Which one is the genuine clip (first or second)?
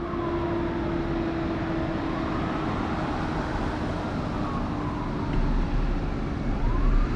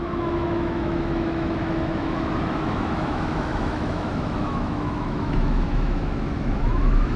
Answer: first